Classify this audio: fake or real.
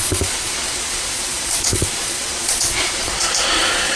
fake